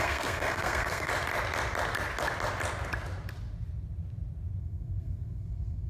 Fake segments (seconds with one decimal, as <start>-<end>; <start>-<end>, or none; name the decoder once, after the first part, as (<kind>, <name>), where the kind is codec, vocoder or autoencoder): 0.0-1.1 (codec, SNAC); 4.6-5.9